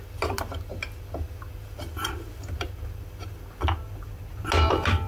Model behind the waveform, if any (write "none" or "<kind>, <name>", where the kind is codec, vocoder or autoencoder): none